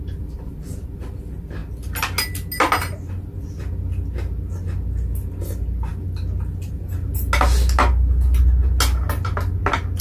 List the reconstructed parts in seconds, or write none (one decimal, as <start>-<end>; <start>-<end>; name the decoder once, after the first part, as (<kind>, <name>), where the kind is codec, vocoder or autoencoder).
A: none

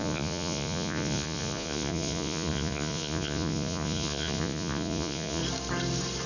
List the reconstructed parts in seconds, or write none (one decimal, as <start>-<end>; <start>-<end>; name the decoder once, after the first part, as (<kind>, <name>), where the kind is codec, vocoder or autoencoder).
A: 0.0-5.4 (vocoder, Vocos)

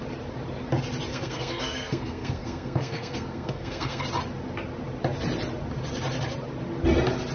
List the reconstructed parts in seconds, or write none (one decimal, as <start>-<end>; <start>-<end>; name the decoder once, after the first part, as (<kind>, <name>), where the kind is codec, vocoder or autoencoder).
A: 1.1-4.0 (codec, SNAC)

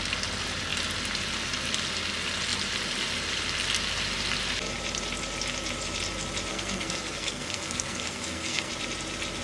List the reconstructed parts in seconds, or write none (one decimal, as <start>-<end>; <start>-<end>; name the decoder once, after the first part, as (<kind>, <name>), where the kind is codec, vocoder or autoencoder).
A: 6.5-8.7 (codec, SNAC)

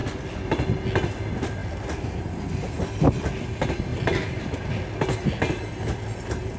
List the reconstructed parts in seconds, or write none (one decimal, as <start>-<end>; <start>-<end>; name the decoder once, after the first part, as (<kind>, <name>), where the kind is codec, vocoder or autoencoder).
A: none